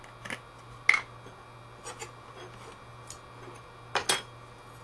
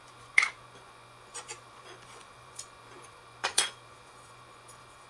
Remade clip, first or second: second